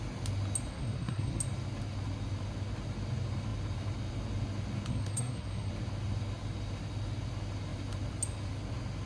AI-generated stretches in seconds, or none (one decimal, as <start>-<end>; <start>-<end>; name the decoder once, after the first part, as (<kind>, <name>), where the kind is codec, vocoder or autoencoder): 0.7-1.4 (codec, SNAC); 4.9-5.7